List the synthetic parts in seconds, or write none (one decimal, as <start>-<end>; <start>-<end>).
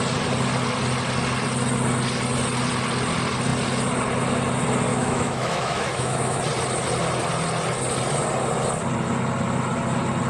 4.9-6.4